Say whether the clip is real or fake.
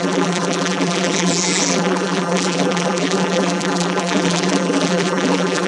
fake